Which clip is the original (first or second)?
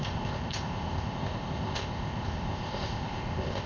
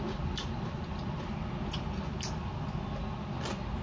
second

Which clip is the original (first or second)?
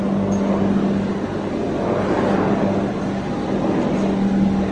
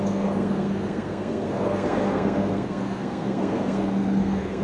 first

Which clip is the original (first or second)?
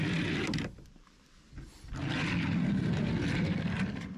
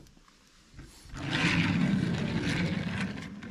second